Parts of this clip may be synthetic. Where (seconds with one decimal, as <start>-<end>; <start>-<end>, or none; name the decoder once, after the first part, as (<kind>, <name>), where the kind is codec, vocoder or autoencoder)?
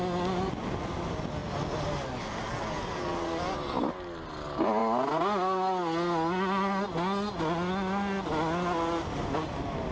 none